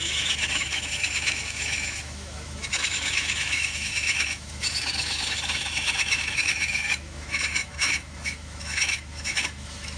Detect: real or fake fake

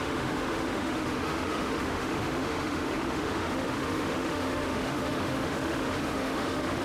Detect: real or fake fake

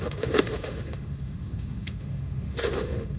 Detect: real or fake fake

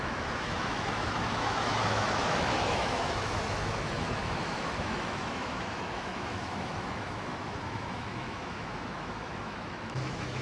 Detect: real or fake fake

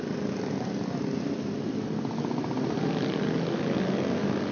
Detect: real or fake real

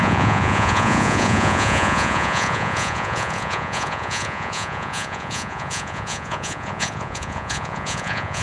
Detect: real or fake fake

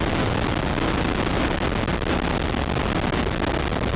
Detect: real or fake real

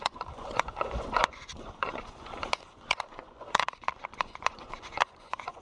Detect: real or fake fake